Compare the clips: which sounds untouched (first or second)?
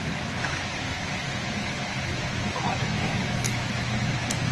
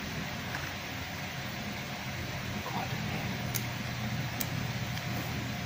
second